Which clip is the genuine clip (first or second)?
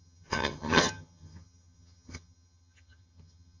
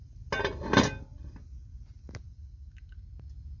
second